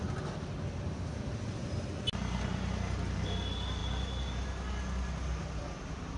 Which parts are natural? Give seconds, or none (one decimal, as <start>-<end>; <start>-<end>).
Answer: 0.0-6.2